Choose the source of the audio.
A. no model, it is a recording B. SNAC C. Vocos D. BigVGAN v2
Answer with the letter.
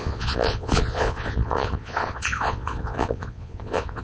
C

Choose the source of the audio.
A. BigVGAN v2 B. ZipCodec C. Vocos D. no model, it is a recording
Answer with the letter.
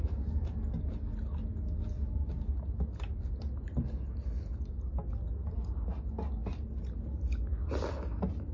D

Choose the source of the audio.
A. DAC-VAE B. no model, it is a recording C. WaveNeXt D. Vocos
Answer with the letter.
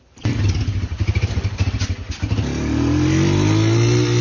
B